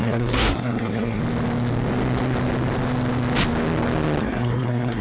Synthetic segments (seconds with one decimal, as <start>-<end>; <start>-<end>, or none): 0.0-1.2; 4.2-5.0